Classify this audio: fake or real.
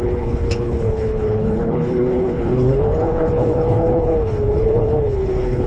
fake